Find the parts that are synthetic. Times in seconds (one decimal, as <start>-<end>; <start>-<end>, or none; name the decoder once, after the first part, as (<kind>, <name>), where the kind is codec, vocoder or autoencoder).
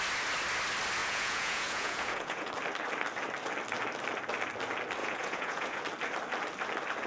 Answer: 1.0-2.5 (vocoder, Vocos); 5.0-5.8